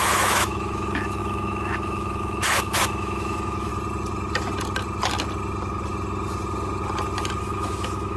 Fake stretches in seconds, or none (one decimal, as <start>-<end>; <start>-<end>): 0.0-3.7; 7.4-8.2

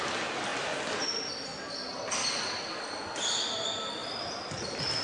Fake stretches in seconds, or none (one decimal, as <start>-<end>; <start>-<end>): none

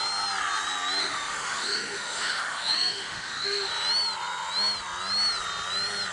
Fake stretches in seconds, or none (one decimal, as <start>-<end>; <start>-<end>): 1.0-3.7

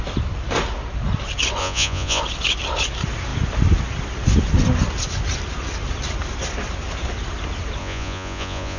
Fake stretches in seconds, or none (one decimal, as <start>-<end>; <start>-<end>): 1.6-2.2; 7.8-8.8